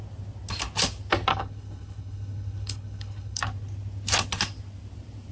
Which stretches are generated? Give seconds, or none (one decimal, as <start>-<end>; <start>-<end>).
1.3-3.4